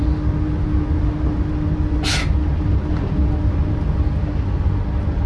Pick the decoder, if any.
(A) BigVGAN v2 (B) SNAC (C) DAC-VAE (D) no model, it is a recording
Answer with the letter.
D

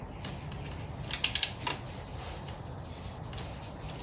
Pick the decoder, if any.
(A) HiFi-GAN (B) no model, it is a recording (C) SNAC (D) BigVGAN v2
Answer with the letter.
B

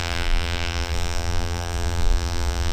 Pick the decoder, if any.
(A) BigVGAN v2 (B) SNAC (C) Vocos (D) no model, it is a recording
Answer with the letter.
A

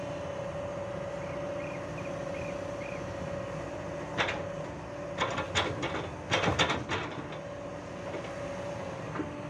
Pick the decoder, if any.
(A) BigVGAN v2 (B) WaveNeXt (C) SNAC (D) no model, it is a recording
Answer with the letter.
D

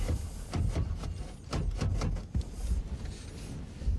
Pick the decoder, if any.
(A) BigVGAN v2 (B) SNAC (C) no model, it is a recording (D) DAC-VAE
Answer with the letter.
C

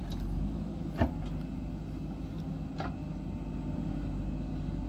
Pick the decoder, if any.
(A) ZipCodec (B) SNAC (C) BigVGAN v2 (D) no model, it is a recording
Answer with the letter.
D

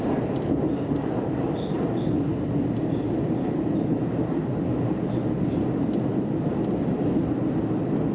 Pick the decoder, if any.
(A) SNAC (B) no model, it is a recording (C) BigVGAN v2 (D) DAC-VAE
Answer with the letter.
B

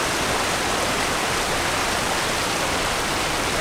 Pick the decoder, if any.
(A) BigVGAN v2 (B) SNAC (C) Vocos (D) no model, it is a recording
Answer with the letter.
A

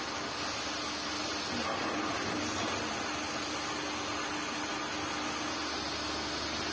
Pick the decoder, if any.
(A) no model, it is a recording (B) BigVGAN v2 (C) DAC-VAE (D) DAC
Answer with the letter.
A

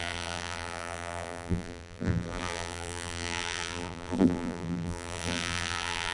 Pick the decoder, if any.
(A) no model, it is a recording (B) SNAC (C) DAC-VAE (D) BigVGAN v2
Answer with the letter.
D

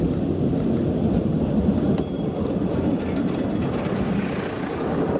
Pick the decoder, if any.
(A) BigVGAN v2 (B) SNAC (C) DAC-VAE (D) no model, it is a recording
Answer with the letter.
A